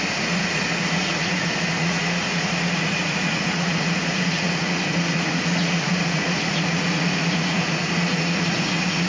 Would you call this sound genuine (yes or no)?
no